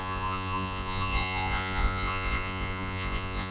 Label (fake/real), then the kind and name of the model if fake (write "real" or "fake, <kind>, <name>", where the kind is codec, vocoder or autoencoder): fake, vocoder, Vocos